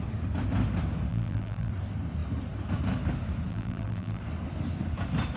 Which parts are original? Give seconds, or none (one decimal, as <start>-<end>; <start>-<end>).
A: 0.0-1.1; 1.7-3.5; 4.2-5.4